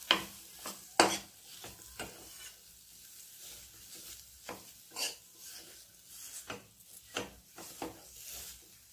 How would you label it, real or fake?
real